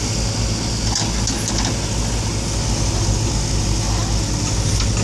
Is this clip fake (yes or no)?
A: no